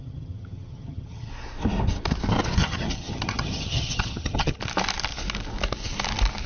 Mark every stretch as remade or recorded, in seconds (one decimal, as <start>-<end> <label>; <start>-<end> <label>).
0.0-1.3 remade; 1.3-2.6 recorded; 2.6-4.6 remade; 4.6-6.5 recorded